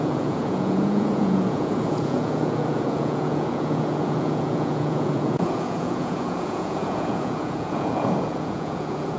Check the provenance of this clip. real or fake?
fake